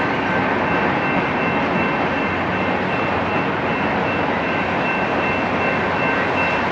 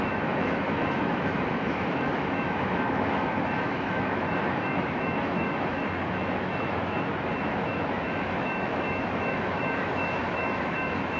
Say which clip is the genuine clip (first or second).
first